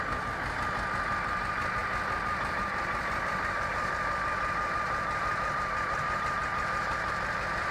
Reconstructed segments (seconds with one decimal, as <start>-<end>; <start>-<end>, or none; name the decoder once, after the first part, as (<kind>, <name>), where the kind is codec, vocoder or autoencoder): 1.8-6.3 (vocoder, BigVGAN v2)